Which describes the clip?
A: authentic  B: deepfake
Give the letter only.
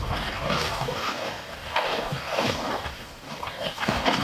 B